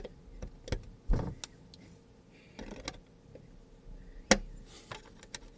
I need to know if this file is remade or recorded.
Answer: recorded